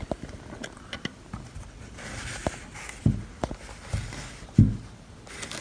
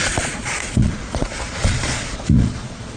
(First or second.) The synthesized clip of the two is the second